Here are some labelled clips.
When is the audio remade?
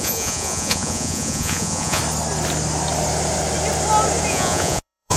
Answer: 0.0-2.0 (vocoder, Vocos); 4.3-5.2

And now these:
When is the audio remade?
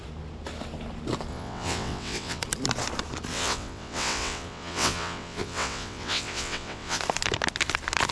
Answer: 1.3-2.4 (vocoder, WaveNeXt); 3.3-7.0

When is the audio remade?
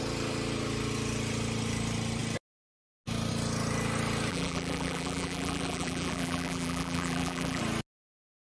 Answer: 4.3-7.6 (vocoder, BigVGAN v2)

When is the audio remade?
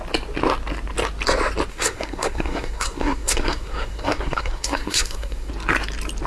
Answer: 1.7-5.5 (codec, SNAC)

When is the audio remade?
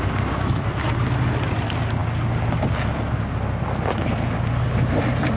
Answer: none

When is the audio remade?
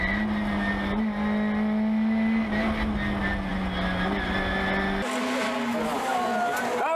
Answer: none